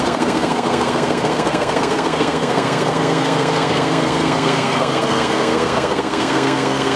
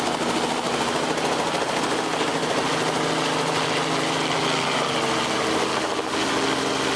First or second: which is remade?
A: first